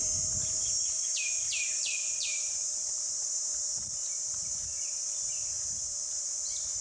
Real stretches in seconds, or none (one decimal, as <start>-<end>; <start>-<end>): 3.5-4.0